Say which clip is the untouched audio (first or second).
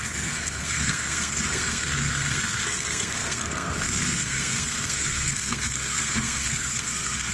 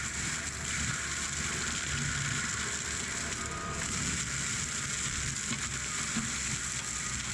second